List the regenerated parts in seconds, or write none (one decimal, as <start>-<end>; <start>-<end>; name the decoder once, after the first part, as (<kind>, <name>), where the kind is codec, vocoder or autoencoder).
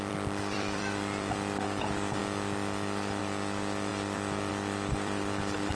0.0-2.2 (vocoder, BigVGAN v2); 3.2-5.7